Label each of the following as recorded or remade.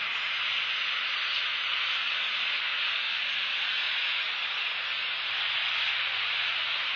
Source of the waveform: recorded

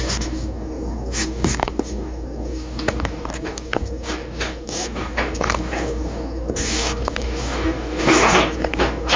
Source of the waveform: remade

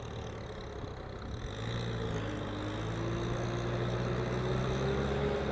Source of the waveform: recorded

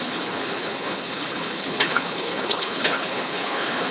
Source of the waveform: remade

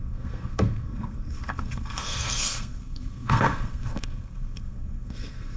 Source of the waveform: remade